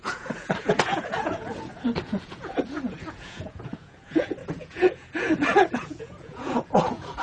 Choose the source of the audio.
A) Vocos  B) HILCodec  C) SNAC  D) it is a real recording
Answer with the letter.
A